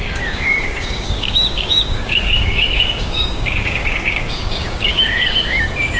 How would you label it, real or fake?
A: fake